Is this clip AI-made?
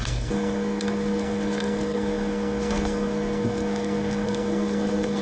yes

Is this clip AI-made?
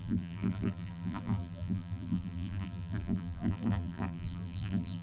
yes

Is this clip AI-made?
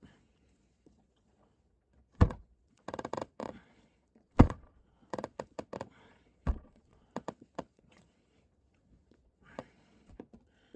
yes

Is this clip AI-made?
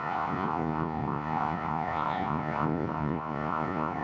yes